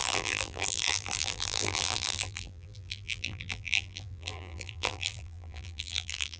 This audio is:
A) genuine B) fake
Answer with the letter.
B